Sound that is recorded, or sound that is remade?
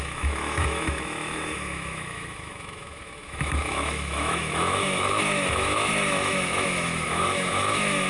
remade